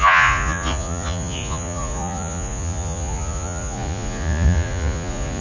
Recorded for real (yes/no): no